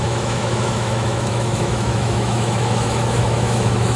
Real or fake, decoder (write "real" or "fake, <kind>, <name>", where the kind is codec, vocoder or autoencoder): fake, autoencoder, DAC-VAE